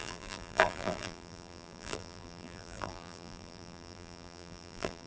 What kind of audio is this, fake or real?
fake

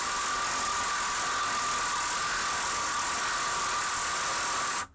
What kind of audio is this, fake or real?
real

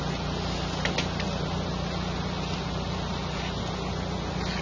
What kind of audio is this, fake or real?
real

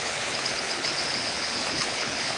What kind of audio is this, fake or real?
fake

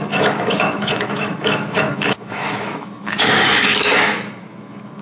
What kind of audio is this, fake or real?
fake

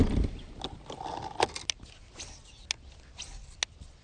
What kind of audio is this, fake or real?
real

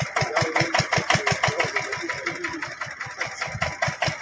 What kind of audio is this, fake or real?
real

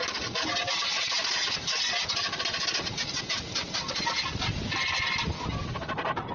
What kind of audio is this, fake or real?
real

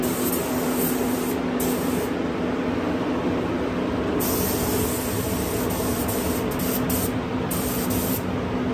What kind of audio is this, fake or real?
real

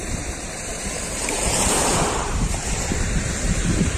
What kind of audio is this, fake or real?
fake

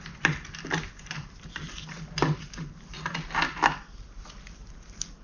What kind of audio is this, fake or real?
real